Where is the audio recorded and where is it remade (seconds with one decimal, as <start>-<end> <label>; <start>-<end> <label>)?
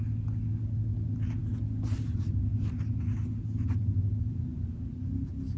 0.0-5.6 recorded